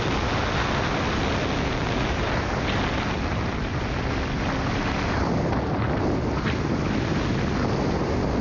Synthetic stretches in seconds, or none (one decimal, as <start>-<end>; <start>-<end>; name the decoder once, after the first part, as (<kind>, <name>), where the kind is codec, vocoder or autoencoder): none